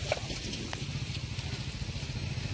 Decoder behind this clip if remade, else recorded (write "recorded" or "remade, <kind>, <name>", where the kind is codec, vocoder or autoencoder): recorded